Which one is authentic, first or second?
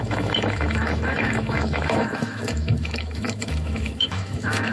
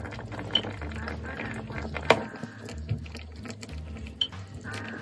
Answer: second